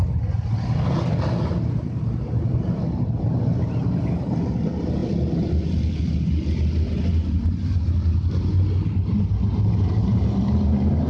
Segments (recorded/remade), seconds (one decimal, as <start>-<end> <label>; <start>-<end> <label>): 0.0-11.1 recorded